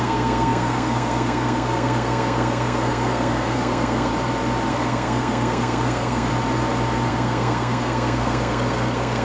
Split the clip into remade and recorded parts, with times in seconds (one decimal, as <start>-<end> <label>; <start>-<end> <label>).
0.0-4.1 remade; 4.1-4.7 recorded; 4.7-6.3 remade; 6.3-7.1 recorded; 7.1-9.2 remade